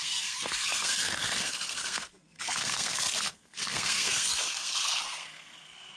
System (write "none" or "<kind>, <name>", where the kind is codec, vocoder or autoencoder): codec, SNAC